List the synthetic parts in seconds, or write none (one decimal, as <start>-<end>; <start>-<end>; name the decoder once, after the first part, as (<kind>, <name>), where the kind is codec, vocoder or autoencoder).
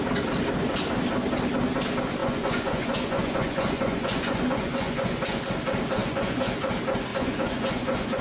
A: 2.2-5.5 (vocoder, Vocos); 6.0-6.5; 7.1-8.2